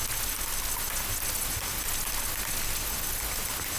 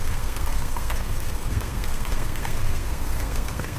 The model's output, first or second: second